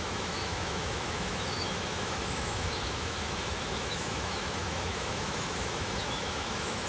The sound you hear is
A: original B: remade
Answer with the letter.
B